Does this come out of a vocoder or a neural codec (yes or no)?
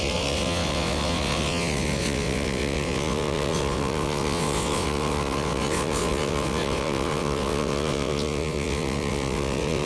yes